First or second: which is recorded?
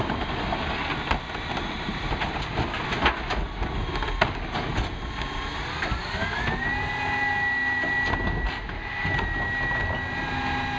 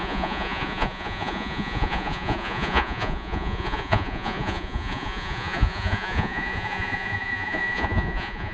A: first